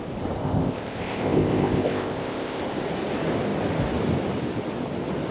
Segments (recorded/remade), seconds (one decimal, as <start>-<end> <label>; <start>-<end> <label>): 0.0-0.4 recorded; 0.4-2.6 remade; 2.6-5.3 recorded